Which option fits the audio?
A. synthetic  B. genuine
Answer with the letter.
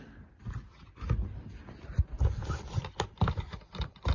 B